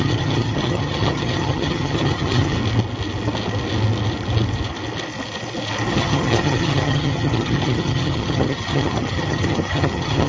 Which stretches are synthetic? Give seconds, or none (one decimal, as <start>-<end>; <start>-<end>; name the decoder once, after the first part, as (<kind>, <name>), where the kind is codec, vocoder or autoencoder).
0.0-2.6 (vocoder, HiFi-GAN); 5.9-10.3

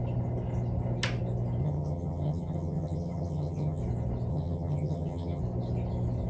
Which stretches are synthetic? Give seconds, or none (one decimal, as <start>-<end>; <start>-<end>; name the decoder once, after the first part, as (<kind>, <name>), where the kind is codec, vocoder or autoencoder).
1.6-3.8 (vocoder, HiFi-GAN); 4.3-5.4

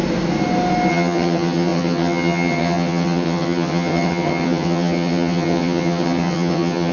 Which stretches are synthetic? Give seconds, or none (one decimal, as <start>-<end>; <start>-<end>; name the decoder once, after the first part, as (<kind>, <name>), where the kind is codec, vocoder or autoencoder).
0.9-6.9 (vocoder, HiFi-GAN)

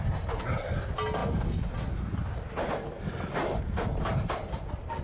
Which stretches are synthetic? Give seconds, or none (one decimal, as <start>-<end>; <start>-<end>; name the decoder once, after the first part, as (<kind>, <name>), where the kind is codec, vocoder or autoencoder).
none

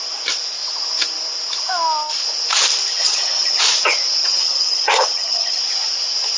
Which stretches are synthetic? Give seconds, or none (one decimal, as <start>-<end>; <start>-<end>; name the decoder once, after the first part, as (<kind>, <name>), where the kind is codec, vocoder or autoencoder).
3.0-3.6 (vocoder, HiFi-GAN); 4.2-5.6